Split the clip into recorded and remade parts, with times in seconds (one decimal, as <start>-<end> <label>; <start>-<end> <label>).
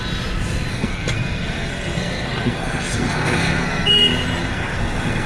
0.0-0.7 recorded; 0.7-3.9 remade; 3.9-4.4 recorded; 4.4-5.3 remade